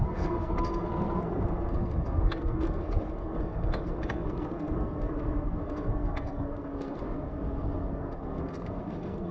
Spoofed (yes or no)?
yes